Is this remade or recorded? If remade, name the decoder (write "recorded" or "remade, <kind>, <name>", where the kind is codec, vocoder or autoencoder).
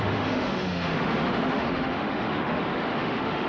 remade, autoencoder, DAC-VAE